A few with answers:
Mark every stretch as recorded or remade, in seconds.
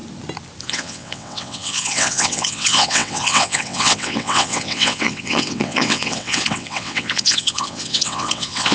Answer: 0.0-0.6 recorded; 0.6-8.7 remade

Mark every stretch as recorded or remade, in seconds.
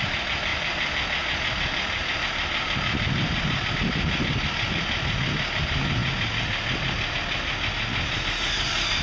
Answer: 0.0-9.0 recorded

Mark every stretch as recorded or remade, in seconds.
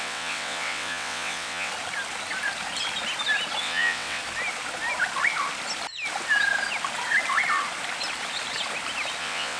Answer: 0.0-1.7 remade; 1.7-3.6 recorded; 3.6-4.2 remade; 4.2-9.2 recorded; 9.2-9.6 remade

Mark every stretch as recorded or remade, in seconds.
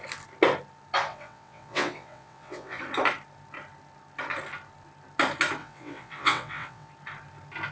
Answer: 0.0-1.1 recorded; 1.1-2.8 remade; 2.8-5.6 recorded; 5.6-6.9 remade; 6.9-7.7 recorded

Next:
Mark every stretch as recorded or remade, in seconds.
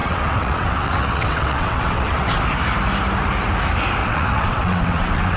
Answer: 0.0-2.4 remade; 2.4-4.0 recorded; 4.0-5.4 remade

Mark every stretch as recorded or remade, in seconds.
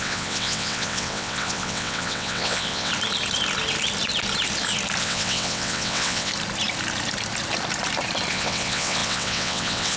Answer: 0.0-2.9 remade; 2.9-5.0 recorded; 5.0-6.3 remade; 6.3-8.3 recorded; 8.3-10.0 remade